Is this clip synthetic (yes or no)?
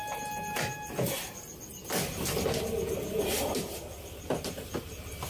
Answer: no